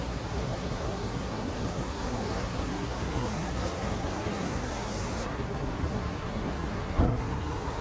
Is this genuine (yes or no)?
no